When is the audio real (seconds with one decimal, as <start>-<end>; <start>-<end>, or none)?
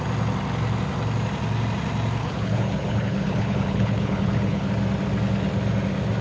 0.0-2.2; 4.7-6.2